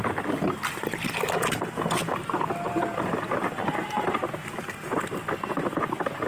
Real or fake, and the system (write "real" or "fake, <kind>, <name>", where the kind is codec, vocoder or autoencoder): real